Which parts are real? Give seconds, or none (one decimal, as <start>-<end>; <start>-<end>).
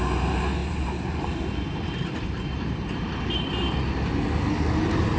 0.0-0.6; 3.2-5.2